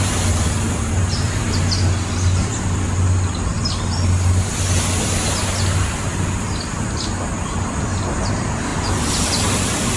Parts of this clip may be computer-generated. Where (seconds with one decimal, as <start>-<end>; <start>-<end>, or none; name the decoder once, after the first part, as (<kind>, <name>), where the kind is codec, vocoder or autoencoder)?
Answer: none